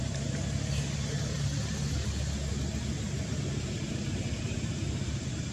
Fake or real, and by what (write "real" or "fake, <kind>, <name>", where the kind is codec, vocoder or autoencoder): real